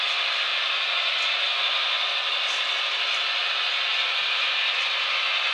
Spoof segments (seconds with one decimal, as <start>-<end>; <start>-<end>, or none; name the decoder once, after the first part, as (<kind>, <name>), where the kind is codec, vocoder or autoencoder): none